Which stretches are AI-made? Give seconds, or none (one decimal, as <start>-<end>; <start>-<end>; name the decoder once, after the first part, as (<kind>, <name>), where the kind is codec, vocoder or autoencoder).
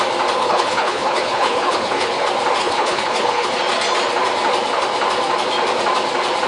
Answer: 0.4-2.2 (codec, HILCodec); 2.6-3.5